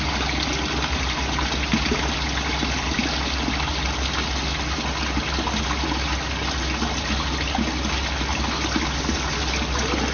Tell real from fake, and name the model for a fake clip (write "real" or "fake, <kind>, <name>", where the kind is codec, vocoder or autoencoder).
real